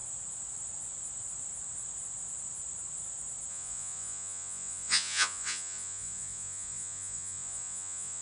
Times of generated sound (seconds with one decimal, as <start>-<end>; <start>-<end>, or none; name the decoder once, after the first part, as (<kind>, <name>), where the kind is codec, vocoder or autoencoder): 3.5-8.2 (vocoder, Vocos)